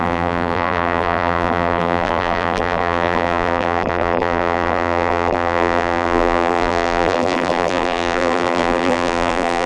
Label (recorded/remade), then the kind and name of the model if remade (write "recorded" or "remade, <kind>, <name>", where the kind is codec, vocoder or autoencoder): remade, vocoder, BigVGAN v2